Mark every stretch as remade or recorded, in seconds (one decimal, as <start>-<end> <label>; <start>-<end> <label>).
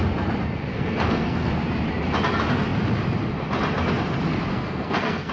0.0-0.7 recorded; 0.7-1.5 remade; 1.5-4.5 recorded; 4.5-5.3 remade